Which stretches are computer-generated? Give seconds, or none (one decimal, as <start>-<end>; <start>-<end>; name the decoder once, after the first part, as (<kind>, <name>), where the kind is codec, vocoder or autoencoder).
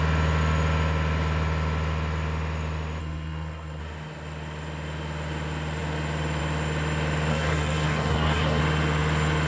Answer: 3.0-3.8 (codec, SNAC); 7.3-8.6